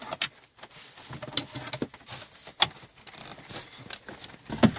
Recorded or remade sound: recorded